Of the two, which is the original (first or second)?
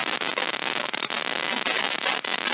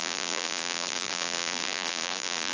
first